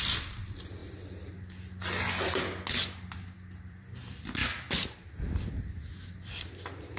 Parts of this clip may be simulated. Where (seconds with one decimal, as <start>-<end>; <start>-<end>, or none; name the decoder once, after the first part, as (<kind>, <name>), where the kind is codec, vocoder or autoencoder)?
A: 0.0-0.8 (vocoder, BigVGAN v2); 3.6-4.4